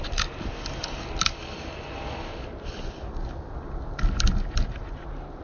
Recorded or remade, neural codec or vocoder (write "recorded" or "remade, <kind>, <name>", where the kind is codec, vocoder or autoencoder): recorded